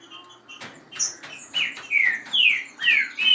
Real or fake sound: real